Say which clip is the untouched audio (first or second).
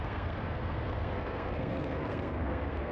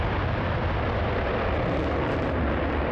second